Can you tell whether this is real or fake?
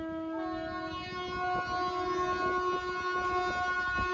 real